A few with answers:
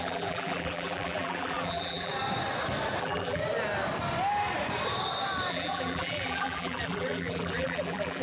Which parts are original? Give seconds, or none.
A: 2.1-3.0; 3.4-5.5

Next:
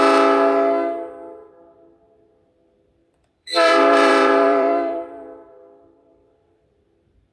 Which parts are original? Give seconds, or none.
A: 0.0-3.0; 6.7-7.3

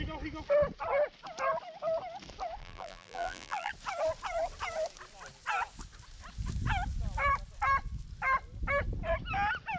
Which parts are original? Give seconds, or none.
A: 0.0-2.6; 3.7-9.8

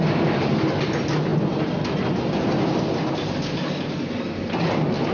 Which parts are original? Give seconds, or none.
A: 0.0-5.1

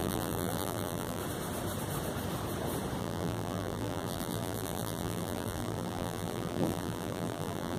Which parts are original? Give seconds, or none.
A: 1.2-3.0

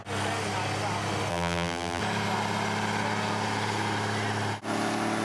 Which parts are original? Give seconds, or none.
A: 0.0-1.3; 2.0-5.2

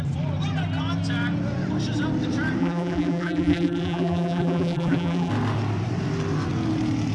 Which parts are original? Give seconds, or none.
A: 0.0-2.6; 5.3-7.1

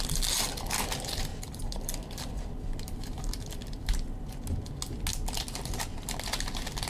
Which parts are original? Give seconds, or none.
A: 0.0-1.3; 4.2-6.9